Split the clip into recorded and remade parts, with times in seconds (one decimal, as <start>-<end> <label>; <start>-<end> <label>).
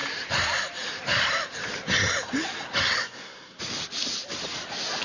0.0-3.0 recorded; 3.0-3.6 remade; 3.6-5.0 recorded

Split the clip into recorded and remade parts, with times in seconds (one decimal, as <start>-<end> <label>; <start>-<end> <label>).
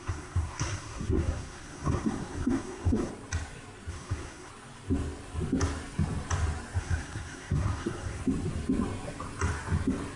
0.0-3.1 remade; 3.1-3.9 recorded; 3.9-4.5 remade; 4.5-6.8 recorded; 6.8-8.2 remade; 8.2-10.2 recorded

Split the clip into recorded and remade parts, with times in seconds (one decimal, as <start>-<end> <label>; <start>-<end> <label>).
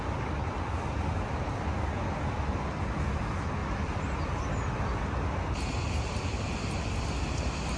0.0-7.8 recorded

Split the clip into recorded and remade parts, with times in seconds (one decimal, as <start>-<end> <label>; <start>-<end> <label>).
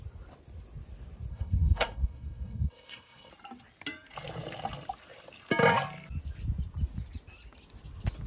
0.0-1.3 recorded; 1.3-3.3 remade; 3.3-8.3 recorded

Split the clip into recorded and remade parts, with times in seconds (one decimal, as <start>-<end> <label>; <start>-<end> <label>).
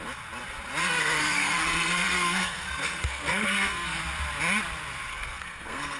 0.0-0.8 recorded; 0.8-4.0 remade; 4.0-5.1 recorded; 5.1-6.0 remade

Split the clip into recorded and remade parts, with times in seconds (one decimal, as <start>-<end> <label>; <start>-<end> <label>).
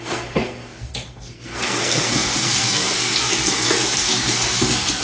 0.0-5.0 remade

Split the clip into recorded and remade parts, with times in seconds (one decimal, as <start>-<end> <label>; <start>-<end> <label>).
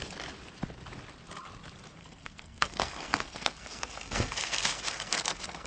0.0-2.0 recorded; 2.0-5.7 remade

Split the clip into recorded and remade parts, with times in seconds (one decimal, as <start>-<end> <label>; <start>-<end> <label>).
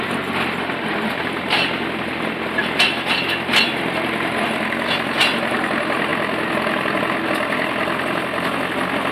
0.0-9.1 recorded